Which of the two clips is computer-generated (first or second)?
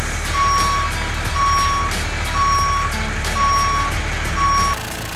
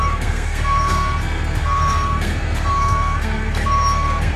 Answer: second